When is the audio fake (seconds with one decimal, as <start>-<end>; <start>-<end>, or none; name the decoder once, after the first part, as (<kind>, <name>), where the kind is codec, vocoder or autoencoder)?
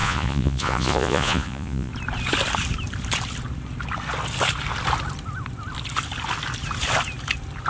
0.0-1.9 (vocoder, Vocos)